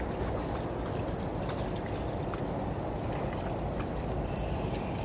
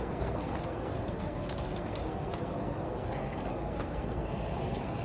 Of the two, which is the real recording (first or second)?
first